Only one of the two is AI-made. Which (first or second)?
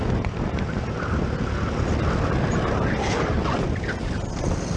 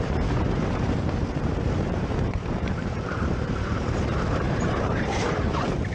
second